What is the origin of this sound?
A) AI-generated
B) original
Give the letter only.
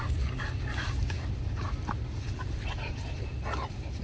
B